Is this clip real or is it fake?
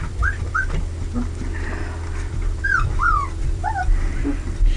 fake